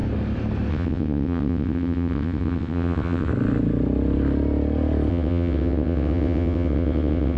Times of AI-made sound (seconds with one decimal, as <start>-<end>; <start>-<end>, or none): 0.7-3.3; 5.1-7.4